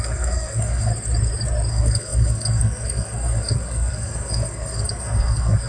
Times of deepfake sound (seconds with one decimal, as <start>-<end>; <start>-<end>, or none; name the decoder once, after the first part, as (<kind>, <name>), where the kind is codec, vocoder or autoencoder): 0.0-0.9 (codec, SNAC); 1.7-5.7